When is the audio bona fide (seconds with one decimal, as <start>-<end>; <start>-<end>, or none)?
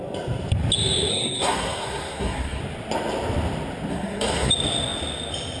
0.0-1.1; 2.6-3.9; 4.5-5.6